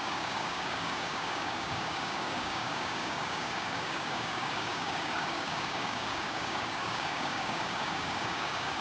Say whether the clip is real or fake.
fake